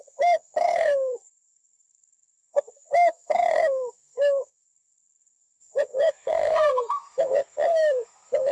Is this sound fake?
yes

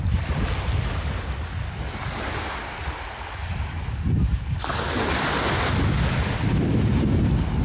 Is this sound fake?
no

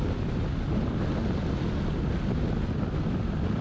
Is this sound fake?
no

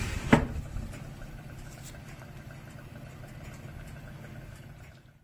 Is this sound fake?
no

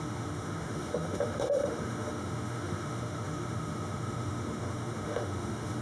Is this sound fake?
yes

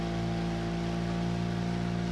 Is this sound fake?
no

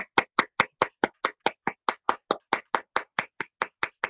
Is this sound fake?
no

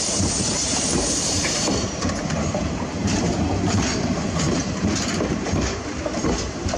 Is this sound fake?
yes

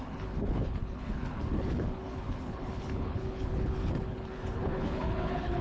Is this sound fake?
yes